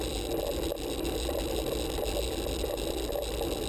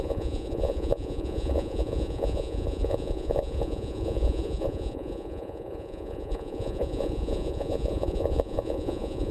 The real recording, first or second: first